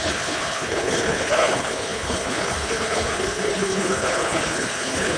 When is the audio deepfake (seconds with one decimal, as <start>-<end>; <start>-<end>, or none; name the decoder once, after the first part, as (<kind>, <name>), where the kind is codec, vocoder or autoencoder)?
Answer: 0.0-5.2 (codec, HILCodec)